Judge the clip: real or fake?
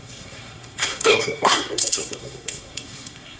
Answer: fake